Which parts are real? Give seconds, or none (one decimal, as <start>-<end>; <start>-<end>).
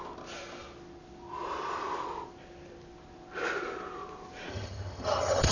0.0-4.5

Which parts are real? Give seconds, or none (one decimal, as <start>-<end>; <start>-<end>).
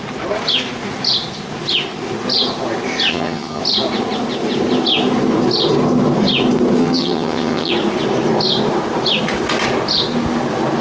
0.0-3.1; 3.6-6.8; 7.7-10.8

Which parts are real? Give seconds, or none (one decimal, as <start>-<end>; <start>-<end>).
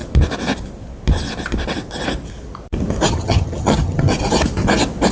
0.0-3.1; 4.1-5.1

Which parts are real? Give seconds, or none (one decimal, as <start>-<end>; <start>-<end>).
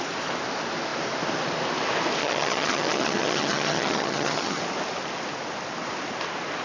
0.0-2.2; 4.6-6.6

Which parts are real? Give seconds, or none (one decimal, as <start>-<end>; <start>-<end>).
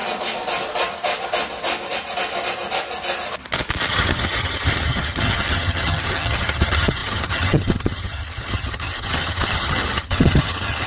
0.0-3.9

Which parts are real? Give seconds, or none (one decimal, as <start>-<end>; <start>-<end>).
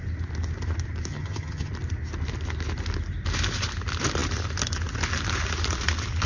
0.0-1.1; 1.7-6.3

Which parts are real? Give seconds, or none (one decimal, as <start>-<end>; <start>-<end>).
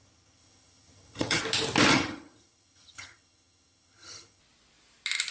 1.4-1.9; 4.4-5.3